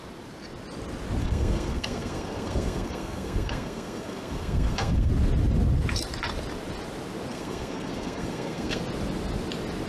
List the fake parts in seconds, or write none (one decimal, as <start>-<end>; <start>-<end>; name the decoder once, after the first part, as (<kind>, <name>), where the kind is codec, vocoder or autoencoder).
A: 1.2-5.1 (codec, SNAC); 7.3-8.8

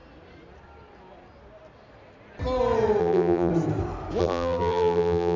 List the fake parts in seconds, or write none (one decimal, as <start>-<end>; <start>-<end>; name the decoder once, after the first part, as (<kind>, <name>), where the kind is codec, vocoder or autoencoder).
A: 3.0-3.5 (vocoder, BigVGAN v2); 4.2-5.4